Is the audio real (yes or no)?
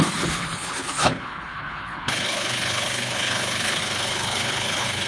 no